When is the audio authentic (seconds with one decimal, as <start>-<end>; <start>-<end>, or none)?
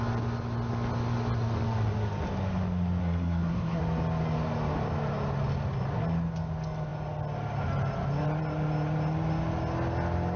0.0-3.0; 3.8-10.4